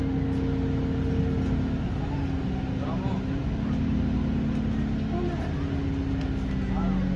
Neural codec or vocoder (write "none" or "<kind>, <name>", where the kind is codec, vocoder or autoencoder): none